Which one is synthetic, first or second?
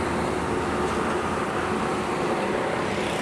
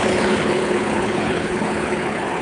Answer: second